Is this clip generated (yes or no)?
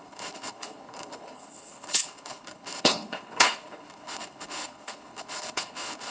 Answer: yes